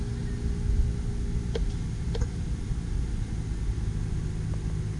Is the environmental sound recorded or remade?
recorded